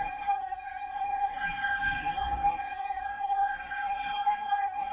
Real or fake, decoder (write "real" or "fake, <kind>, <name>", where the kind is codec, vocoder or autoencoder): fake, codec, SNAC